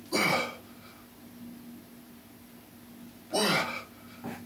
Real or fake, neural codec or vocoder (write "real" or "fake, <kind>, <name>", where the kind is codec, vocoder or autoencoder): real